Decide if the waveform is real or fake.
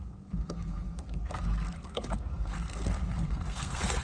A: fake